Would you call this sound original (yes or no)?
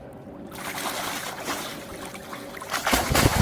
yes